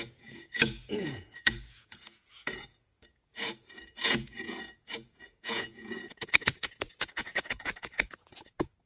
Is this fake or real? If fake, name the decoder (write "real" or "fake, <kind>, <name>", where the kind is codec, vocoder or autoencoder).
fake, vocoder, Vocos